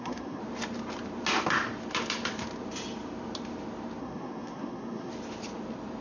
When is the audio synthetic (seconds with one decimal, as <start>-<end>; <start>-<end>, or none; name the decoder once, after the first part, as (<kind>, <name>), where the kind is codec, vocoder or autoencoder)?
0.0-0.4 (codec, SNAC); 4.0-5.1